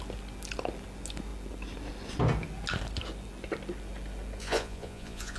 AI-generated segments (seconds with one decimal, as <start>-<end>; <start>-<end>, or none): 4.4-5.4